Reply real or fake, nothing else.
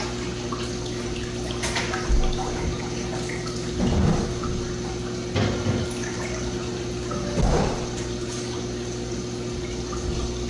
real